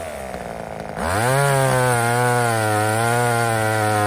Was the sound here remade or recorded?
recorded